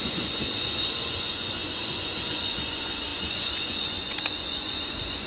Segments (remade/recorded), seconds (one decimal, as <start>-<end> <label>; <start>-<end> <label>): 0.0-5.3 remade